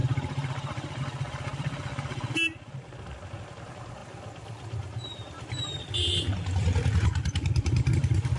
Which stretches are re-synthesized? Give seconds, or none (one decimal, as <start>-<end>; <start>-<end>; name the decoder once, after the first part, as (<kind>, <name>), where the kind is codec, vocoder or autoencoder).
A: 0.0-1.0 (vocoder, BigVGAN v2)